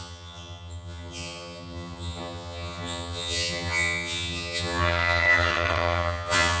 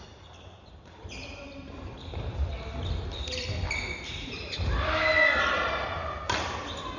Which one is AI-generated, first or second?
first